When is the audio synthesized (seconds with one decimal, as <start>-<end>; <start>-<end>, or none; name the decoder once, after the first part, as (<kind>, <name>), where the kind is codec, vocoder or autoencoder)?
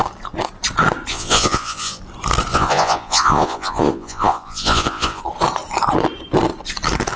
1.1-2.0 (vocoder, Vocos); 2.5-5.2